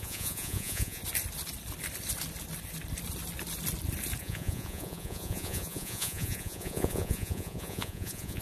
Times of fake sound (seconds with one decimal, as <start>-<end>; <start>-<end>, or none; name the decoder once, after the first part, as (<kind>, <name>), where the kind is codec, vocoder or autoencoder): 0.0-1.0 (vocoder, Vocos); 4.2-8.4